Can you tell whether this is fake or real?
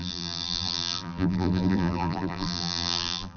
fake